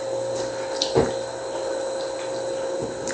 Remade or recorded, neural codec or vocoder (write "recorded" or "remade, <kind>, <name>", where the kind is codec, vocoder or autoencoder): recorded